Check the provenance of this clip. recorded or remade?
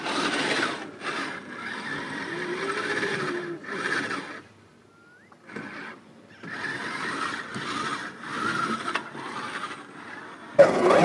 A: recorded